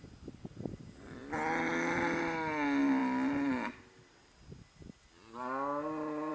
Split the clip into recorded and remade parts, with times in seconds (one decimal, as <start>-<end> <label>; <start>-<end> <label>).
0.0-6.3 recorded